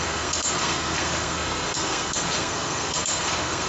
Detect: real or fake fake